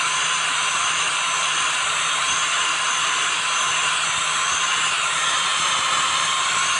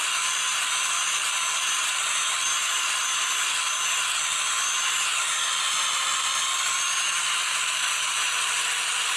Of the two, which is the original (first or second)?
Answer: second